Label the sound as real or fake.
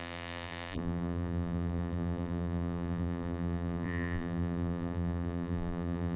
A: fake